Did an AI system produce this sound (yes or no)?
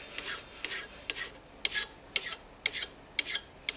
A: no